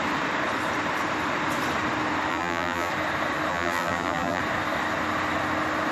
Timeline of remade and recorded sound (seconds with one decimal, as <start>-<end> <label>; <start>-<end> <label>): 0.0-2.3 recorded; 2.3-2.9 remade; 2.9-3.5 recorded; 3.5-4.4 remade; 4.4-5.9 recorded